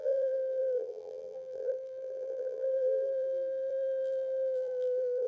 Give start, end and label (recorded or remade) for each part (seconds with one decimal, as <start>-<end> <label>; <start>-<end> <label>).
0.0-5.3 remade